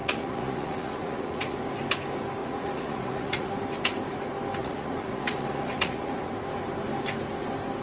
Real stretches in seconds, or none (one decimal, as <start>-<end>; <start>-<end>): 1.6-2.4; 3.5-4.6; 6.3-7.8